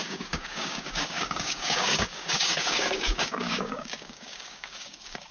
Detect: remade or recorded remade